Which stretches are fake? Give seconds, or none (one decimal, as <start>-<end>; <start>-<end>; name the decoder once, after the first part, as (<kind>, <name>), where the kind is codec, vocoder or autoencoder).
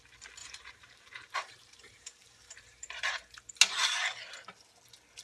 0.4-3.5 (vocoder, BigVGAN v2)